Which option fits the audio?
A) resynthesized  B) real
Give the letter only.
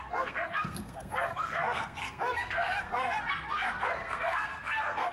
A